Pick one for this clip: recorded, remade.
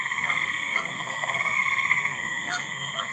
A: remade